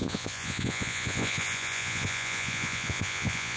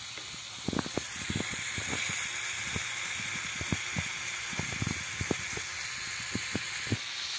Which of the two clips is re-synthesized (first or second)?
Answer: first